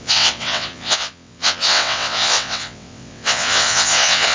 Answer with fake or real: fake